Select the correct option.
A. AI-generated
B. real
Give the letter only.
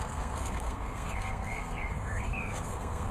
A